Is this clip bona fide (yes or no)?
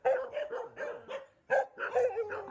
yes